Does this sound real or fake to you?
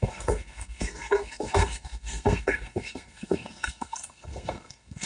fake